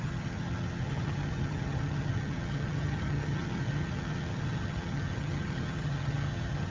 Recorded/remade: remade